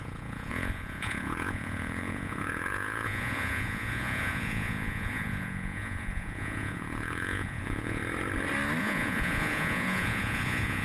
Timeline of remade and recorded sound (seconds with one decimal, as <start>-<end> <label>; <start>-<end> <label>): 0.0-8.0 remade; 8.0-8.8 recorded; 8.8-10.8 remade